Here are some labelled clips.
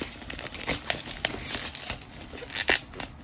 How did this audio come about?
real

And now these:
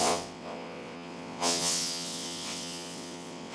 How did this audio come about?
fake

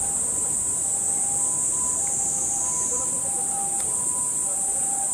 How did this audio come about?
real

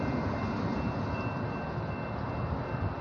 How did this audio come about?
real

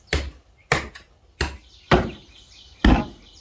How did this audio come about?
real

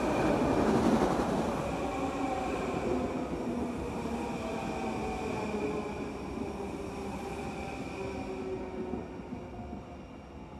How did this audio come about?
real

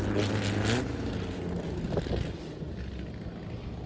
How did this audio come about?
real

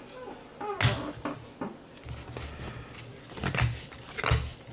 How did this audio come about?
real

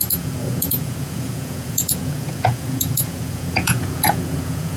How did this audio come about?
fake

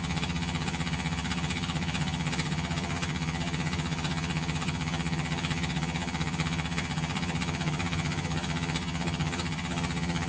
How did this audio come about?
fake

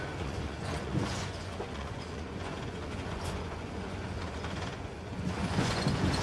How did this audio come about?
fake